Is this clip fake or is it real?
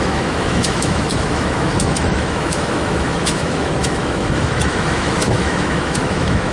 fake